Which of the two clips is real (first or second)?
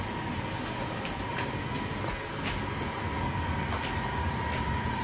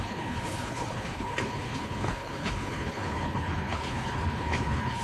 first